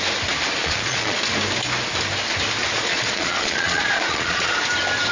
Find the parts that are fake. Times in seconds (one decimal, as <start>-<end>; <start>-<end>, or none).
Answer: 0.6-1.2; 2.6-4.6